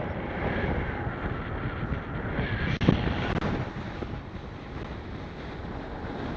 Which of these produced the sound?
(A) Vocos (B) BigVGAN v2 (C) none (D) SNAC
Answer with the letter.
C